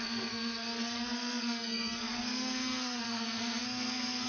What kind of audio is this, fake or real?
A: fake